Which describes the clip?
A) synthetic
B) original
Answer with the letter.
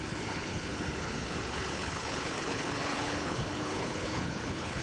A